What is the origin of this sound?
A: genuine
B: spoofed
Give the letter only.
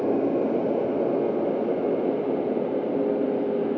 A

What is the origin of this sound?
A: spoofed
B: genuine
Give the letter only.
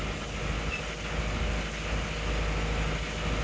B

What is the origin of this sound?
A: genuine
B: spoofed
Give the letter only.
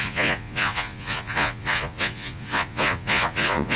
B